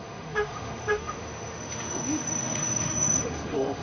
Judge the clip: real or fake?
fake